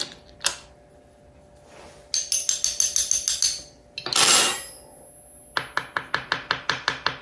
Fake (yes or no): no